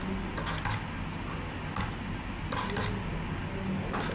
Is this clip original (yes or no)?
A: yes